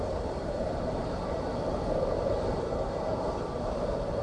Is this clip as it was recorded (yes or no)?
no